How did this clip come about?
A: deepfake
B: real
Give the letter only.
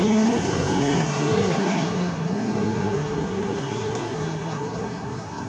A